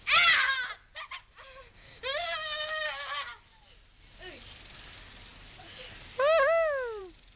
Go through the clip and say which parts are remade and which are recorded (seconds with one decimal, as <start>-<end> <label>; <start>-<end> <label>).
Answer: 0.0-7.4 recorded